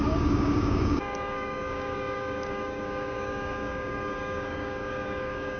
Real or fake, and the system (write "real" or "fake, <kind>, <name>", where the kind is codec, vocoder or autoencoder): fake, codec, DAC